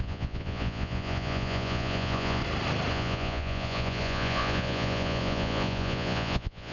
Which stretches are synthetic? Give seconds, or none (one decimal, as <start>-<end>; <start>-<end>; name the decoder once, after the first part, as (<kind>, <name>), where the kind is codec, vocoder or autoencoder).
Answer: 0.0-2.4 (vocoder, Vocos); 2.9-6.7